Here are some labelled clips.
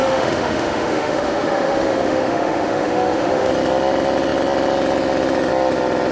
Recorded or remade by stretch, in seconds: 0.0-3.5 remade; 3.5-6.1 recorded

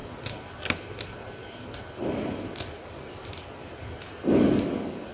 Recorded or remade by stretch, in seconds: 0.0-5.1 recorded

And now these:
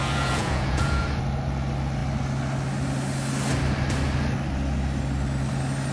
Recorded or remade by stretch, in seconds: 0.0-1.0 remade; 1.0-5.9 recorded

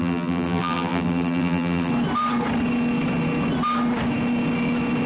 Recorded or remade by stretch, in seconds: 0.0-1.9 remade; 1.9-5.1 recorded

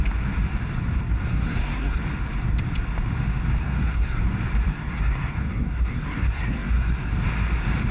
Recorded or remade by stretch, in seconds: 0.0-1.3 recorded; 1.3-2.0 remade; 2.0-3.6 recorded; 3.6-4.2 remade; 4.2-4.7 recorded; 4.7-7.1 remade; 7.1-7.9 recorded

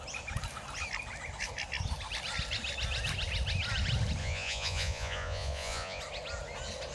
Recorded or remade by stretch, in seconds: 0.0-4.2 recorded; 4.2-6.0 remade; 6.0-6.9 recorded

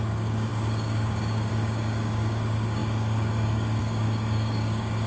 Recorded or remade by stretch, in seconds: 0.0-5.1 remade

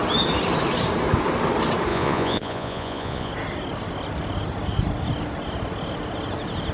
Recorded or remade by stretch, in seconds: 0.0-1.9 recorded; 1.9-3.3 remade; 3.3-6.7 recorded